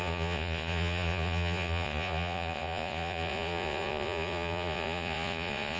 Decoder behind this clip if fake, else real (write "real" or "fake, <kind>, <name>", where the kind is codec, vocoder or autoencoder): fake, vocoder, Vocos